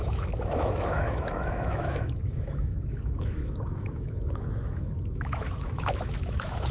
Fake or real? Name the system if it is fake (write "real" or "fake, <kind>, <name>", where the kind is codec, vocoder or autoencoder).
fake, autoencoder, DAC-VAE